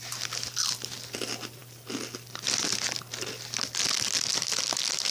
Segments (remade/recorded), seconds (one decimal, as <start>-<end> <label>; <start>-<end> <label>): 0.0-5.1 recorded